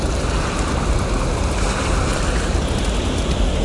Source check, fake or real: real